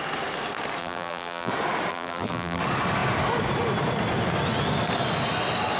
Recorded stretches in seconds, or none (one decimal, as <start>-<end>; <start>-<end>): 0.0-0.8; 1.5-1.9; 2.6-5.8